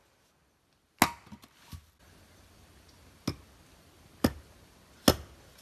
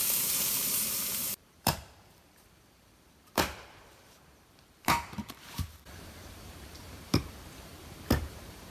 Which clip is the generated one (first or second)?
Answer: second